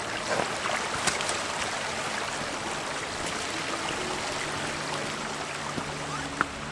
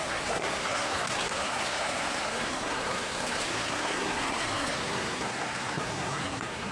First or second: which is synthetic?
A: second